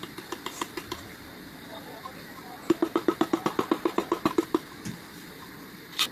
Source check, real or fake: fake